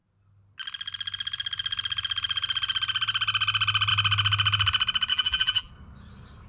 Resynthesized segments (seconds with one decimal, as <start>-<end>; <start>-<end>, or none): 5.1-5.7